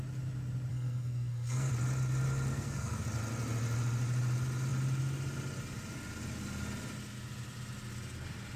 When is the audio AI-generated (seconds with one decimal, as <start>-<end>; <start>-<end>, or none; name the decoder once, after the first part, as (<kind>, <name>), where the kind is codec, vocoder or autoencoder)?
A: 0.7-1.7 (codec, SNAC); 2.5-3.0